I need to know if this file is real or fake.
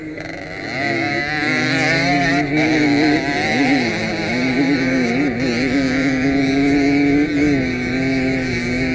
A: real